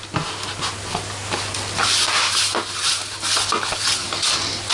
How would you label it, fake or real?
real